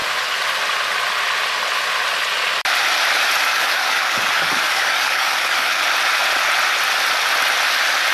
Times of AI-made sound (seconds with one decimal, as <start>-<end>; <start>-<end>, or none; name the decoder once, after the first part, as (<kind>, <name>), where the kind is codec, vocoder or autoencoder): 3.5-5.8 (codec, DAC)